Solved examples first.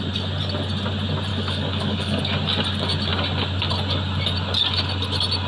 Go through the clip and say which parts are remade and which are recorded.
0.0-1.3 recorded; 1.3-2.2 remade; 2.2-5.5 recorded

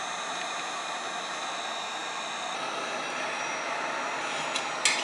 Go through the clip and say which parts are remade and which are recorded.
0.0-5.0 recorded

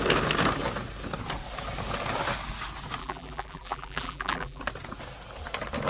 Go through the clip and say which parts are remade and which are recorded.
0.0-3.0 recorded; 3.0-4.6 remade; 4.6-5.9 recorded

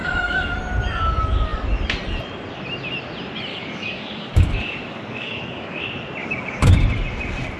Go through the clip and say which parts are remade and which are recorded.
0.0-0.6 remade; 0.6-3.5 recorded; 3.5-5.8 remade; 5.8-6.2 recorded; 6.2-6.7 remade; 6.7-7.6 recorded

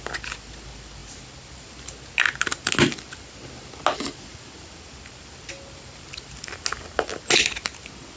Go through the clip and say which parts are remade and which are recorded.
0.0-8.2 recorded

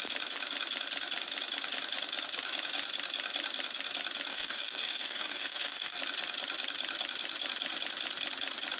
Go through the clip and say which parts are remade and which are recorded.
0.0-4.3 recorded; 4.3-6.0 remade; 6.0-8.8 recorded

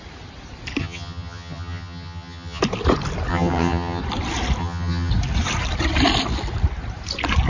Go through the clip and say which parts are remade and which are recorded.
0.0-0.8 recorded; 0.8-2.6 remade; 2.6-3.3 recorded; 3.3-4.0 remade; 4.0-4.6 recorded; 4.6-5.1 remade; 5.1-7.5 recorded